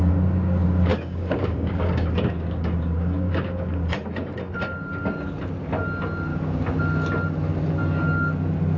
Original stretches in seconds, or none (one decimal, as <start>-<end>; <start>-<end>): 0.0-0.9; 3.6-6.3; 6.8-8.8